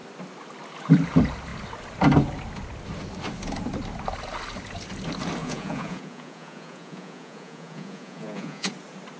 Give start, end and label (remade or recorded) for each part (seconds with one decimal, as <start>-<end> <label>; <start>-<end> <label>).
0.0-5.4 recorded; 5.4-8.7 remade; 8.7-9.2 recorded